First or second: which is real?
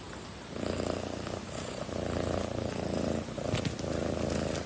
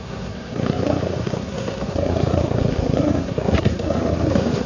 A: first